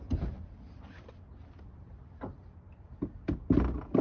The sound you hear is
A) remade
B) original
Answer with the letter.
B